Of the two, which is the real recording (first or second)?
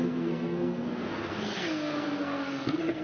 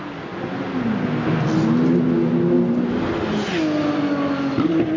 second